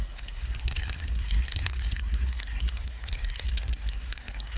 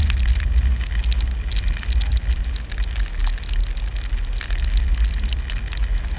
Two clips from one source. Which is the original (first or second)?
second